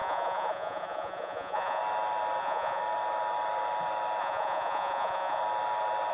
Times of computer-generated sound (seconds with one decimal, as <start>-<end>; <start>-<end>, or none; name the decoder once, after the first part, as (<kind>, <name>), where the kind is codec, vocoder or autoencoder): 0.0-1.8 (vocoder, Vocos); 2.4-2.8; 4.2-5.4